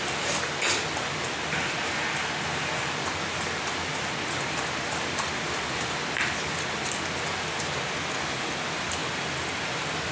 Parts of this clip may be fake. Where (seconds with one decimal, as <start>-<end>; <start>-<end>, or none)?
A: none

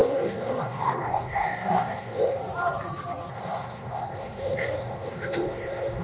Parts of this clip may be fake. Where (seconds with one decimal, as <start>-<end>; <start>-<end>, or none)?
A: 0.0-2.4; 3.3-6.0

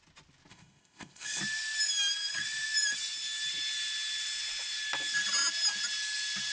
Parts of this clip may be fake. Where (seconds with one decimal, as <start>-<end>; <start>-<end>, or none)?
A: 0.5-1.4

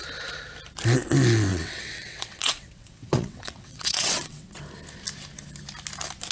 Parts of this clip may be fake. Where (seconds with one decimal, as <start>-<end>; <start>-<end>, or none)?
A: 1.5-4.6

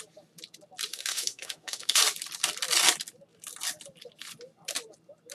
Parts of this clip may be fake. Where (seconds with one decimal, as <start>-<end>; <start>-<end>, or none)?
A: 0.9-2.0

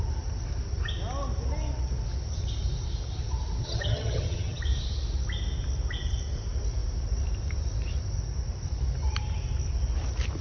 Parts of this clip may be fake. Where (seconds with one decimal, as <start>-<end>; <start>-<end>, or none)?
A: 3.6-4.6

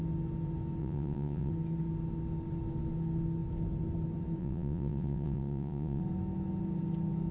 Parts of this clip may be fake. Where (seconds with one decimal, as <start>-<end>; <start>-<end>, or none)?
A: 0.8-1.5; 4.4-6.0

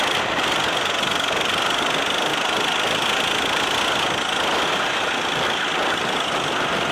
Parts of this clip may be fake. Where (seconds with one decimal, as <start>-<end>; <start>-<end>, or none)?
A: none